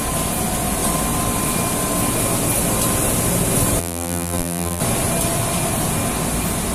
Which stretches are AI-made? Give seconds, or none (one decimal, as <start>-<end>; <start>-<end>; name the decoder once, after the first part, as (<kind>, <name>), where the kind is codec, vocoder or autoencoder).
3.8-4.8 (vocoder, BigVGAN v2)